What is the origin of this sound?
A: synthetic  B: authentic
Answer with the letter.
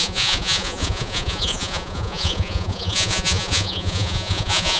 A